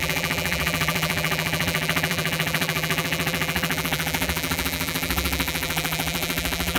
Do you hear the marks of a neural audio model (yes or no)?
yes